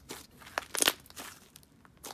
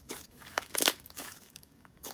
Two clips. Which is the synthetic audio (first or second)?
second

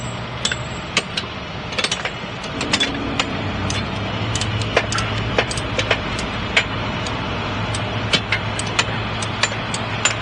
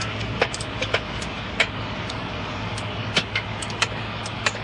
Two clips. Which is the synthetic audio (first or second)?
second